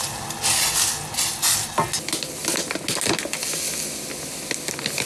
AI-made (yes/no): no